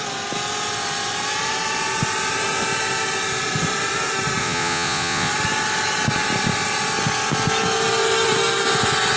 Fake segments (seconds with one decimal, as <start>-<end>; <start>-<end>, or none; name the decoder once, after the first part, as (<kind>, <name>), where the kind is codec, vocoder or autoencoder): 4.4-5.3 (vocoder, Vocos)